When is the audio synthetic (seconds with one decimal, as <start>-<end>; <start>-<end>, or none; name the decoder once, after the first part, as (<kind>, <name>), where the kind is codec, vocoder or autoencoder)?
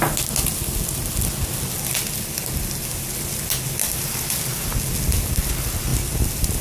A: none